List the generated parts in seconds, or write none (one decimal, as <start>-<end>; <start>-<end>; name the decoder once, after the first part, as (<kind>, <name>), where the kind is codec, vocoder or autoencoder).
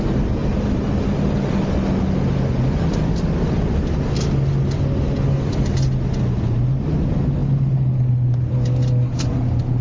none